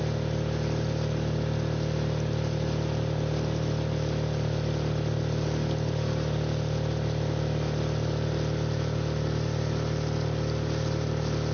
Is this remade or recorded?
recorded